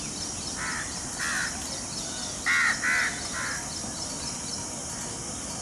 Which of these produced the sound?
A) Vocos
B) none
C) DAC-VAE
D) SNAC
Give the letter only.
B